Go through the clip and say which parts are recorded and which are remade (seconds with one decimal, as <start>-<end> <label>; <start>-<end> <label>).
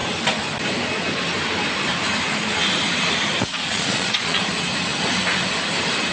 0.0-3.5 recorded; 3.5-4.4 remade; 4.4-6.1 recorded